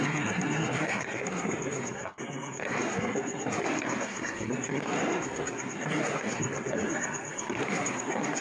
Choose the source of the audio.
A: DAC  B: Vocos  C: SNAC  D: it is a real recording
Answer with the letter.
C